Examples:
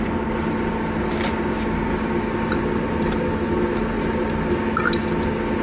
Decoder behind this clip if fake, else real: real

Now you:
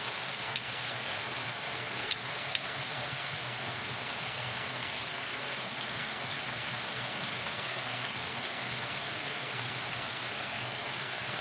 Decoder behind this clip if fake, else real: fake, codec, SNAC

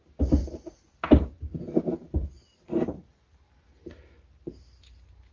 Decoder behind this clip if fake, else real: real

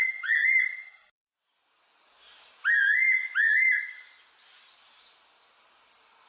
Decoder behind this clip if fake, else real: real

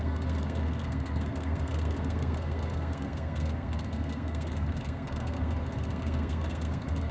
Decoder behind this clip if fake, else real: fake, codec, SNAC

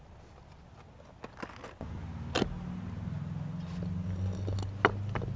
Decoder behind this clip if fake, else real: real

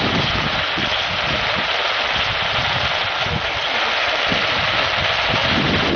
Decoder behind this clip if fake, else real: real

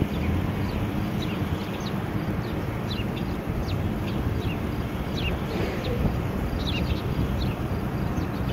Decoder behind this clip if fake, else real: real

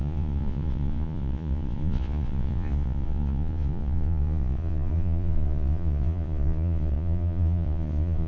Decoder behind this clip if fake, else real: fake, vocoder, Vocos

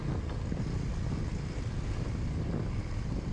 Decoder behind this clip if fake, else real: real